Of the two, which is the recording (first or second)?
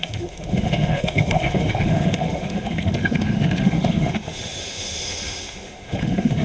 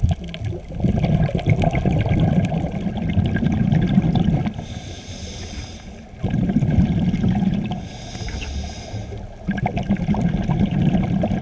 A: second